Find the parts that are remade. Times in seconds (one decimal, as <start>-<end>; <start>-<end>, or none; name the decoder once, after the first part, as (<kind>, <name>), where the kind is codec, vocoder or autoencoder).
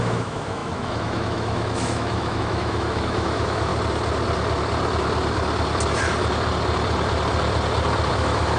0.0-3.7 (autoencoder, DAC-VAE); 8.1-8.6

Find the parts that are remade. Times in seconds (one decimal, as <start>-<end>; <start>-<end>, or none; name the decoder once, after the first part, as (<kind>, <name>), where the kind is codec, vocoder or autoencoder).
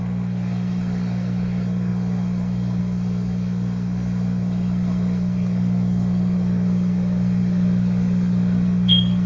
0.0-9.3 (codec, SNAC)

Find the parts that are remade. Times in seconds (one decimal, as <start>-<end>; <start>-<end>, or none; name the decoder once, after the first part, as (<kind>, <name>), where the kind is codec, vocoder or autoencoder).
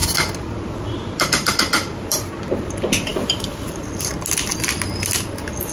0.0-2.3 (vocoder, BigVGAN v2); 3.1-4.1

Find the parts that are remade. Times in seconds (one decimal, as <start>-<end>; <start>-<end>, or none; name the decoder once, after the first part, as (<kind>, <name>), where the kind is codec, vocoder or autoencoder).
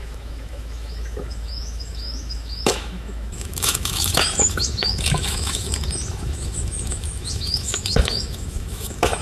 0.0-9.2 (autoencoder, DAC-VAE)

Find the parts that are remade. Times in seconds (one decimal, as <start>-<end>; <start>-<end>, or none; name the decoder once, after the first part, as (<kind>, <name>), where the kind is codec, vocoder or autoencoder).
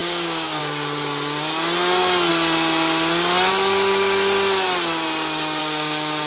0.0-0.6 (codec, DAC); 5.6-6.3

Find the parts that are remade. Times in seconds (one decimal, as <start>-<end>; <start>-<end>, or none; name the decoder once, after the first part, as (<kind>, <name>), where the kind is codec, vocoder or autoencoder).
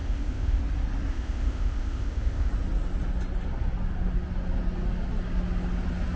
0.0-0.6 (codec, ZipCodec); 1.1-2.5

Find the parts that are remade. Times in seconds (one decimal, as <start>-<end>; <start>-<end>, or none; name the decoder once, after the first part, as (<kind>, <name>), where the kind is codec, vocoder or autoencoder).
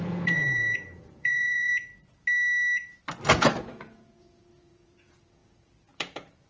0.0-1.7 (vocoder, Vocos); 3.3-6.5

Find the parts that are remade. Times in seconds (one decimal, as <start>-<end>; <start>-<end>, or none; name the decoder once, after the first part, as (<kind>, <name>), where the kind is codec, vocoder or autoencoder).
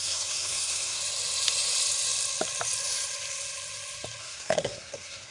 0.0-1.0 (codec, SNAC); 4.2-5.3